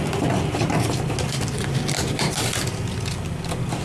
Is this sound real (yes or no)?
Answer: yes